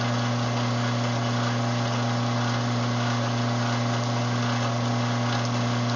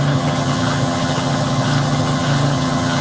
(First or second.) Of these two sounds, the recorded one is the first